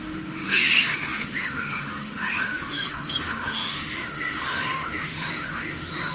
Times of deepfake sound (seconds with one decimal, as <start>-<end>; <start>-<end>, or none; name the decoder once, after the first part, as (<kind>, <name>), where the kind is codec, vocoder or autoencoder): 0.0-6.1 (autoencoder, DAC-VAE)